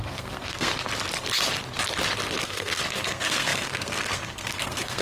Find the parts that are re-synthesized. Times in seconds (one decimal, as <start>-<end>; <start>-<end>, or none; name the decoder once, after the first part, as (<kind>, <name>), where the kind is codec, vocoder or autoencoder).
0.0-0.7 (codec, SNAC); 2.4-5.0